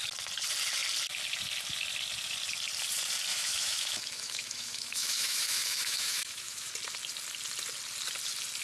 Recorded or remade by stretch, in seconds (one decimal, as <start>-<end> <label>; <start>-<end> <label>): 0.0-3.3 recorded; 3.3-6.7 remade; 6.7-8.6 recorded